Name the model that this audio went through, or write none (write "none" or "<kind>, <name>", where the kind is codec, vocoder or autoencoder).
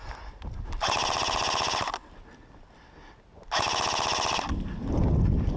none